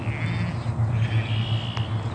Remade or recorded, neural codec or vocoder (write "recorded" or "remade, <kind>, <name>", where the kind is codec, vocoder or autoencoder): recorded